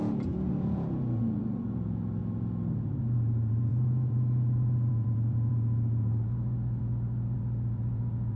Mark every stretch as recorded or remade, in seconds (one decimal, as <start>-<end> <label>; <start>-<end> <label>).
0.0-8.4 remade